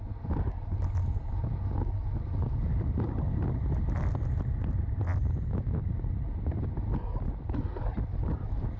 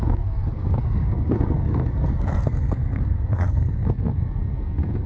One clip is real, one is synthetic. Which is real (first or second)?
first